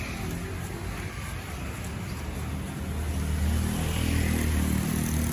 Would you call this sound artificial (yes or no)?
no